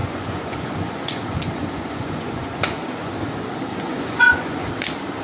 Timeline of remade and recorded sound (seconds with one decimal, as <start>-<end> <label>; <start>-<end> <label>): 0.0-3.1 remade; 3.1-3.7 recorded; 3.7-4.7 remade; 4.7-5.2 recorded

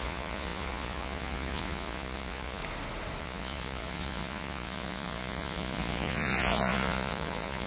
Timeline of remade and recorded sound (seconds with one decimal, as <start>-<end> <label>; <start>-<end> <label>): 0.0-2.6 remade; 2.6-3.2 recorded; 3.2-7.7 remade

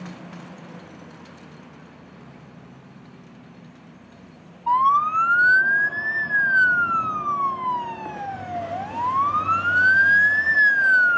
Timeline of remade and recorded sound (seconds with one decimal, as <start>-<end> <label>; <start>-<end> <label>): 0.0-11.2 recorded

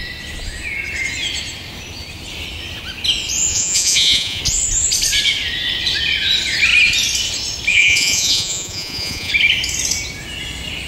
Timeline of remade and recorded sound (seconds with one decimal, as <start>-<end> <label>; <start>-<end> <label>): 0.0-3.5 recorded; 3.5-4.4 remade; 4.4-7.7 recorded; 7.7-9.3 remade; 9.3-10.9 recorded

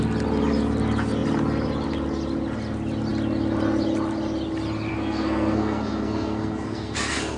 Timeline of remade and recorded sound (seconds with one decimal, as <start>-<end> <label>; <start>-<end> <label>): 0.0-4.9 recorded; 4.9-7.4 remade

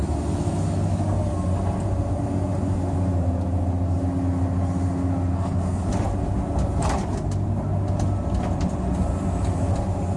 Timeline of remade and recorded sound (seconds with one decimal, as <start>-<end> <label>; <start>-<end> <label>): 0.0-5.3 recorded; 5.3-5.8 remade; 5.8-10.2 recorded